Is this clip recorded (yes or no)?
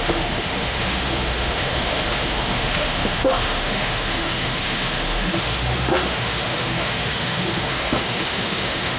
no